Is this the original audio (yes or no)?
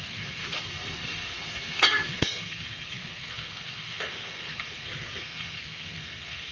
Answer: no